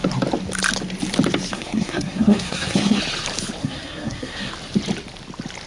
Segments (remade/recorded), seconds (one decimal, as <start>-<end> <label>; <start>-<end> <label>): 0.0-1.5 recorded; 1.5-3.0 remade; 3.0-3.6 recorded; 3.6-4.5 remade; 4.5-5.7 recorded